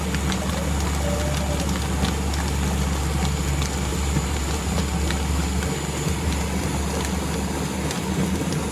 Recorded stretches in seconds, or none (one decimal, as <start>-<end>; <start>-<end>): 0.0-3.9; 4.8-8.7